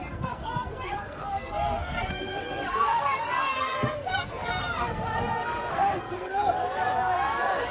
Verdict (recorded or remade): remade